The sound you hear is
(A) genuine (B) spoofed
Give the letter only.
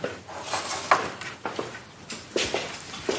A